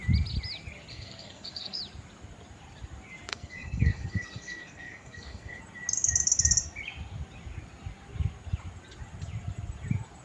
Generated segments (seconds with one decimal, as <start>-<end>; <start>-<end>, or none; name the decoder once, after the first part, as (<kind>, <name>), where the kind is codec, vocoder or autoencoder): 0.9-1.8 (codec, SNAC); 3.3-5.6